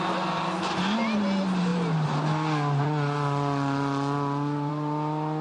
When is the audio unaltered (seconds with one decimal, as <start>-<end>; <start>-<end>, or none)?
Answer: 0.0-5.4